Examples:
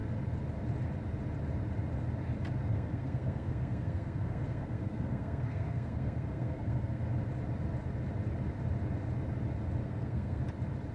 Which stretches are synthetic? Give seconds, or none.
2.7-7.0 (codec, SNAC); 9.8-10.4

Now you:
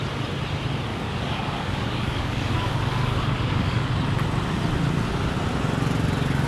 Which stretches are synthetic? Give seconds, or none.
0.9-3.9 (codec, DAC)

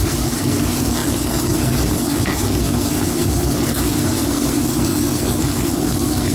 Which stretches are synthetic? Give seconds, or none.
0.0-6.3 (codec, SNAC)

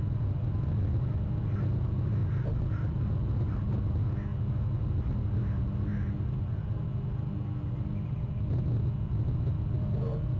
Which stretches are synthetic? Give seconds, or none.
none